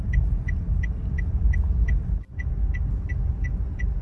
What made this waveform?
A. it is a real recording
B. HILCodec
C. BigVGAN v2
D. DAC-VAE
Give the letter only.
A